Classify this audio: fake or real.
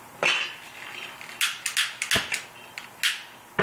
real